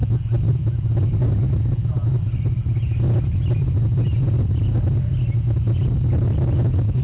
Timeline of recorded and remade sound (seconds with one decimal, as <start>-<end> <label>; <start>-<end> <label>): 0.0-7.0 recorded